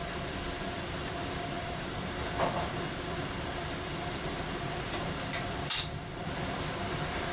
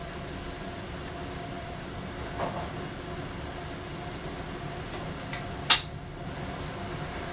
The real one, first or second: second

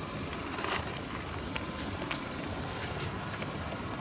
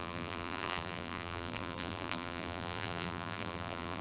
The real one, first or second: first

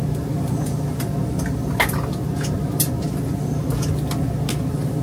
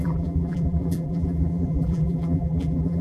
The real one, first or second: first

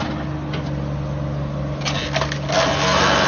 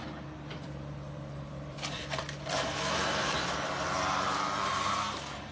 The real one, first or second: first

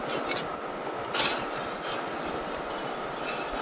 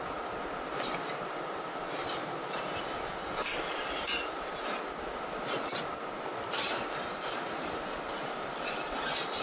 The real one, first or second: first